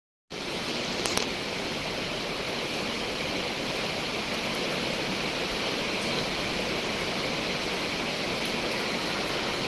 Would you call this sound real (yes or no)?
yes